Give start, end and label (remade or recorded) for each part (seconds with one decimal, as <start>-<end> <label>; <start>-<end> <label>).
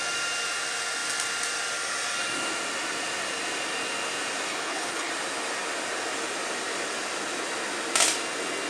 0.0-4.5 recorded; 4.5-5.1 remade; 5.1-8.7 recorded